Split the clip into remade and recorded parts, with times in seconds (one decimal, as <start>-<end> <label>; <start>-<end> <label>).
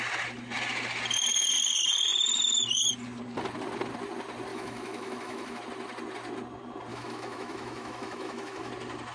0.0-4.5 recorded; 4.5-5.6 remade; 5.6-6.9 recorded; 6.9-8.7 remade; 8.7-9.1 recorded